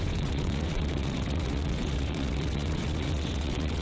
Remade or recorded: remade